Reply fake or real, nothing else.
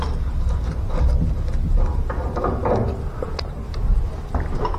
real